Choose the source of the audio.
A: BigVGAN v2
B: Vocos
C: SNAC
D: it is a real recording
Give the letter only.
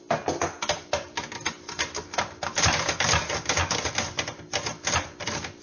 D